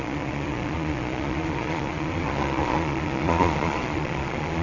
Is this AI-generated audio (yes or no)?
yes